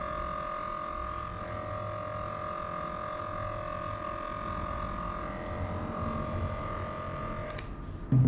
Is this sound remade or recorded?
recorded